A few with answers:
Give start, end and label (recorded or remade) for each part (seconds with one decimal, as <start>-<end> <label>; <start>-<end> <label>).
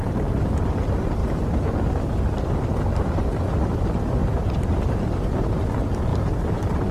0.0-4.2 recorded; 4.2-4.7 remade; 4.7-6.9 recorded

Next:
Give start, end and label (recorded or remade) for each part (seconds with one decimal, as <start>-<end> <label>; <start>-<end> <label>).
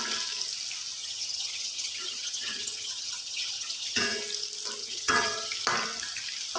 0.0-1.0 recorded; 1.0-4.2 remade; 4.2-4.8 recorded; 4.8-5.5 remade; 5.5-6.6 recorded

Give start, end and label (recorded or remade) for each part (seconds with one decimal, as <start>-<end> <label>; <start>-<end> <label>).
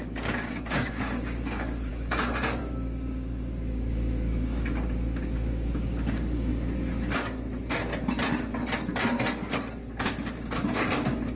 0.0-6.5 remade; 6.5-10.0 recorded; 10.0-11.4 remade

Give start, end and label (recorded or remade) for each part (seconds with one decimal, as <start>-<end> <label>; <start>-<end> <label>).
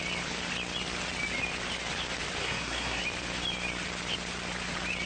0.0-2.4 recorded; 2.4-3.0 remade; 3.0-5.1 recorded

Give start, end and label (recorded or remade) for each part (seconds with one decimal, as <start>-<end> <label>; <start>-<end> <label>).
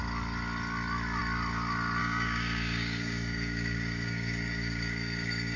0.0-2.0 recorded; 2.0-5.6 remade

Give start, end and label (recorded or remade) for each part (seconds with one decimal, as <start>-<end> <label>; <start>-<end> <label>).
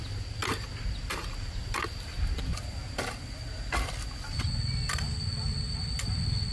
0.0-6.5 recorded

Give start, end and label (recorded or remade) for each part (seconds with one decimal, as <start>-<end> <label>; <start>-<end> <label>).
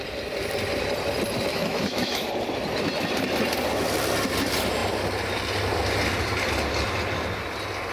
0.0-1.5 recorded; 1.5-2.3 remade; 2.3-7.9 recorded